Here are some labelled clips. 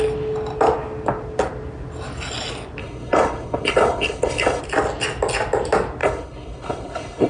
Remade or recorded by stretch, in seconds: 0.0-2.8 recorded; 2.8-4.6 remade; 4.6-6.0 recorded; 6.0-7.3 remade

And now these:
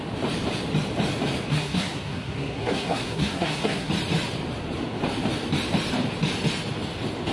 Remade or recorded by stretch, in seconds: 0.0-1.5 recorded; 1.5-3.9 remade; 3.9-7.3 recorded

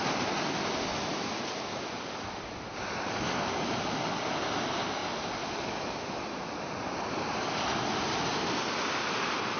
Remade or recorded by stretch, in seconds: 0.0-9.6 recorded

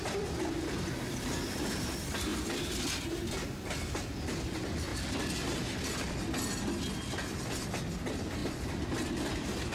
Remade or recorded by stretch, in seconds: 0.0-9.7 recorded

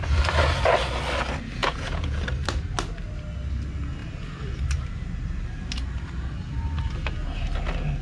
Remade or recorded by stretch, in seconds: 0.0-1.6 recorded; 1.6-2.2 remade; 2.2-8.0 recorded

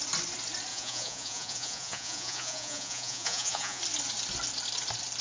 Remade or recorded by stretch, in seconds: 0.0-0.7 recorded; 0.7-3.8 remade; 3.8-5.2 recorded

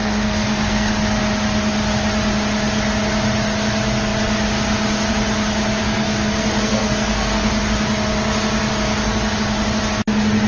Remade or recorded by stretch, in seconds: 0.0-0.9 remade; 0.9-5.8 recorded; 5.8-7.5 remade; 7.5-10.5 recorded

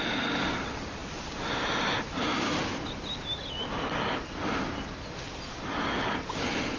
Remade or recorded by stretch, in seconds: 0.0-6.8 recorded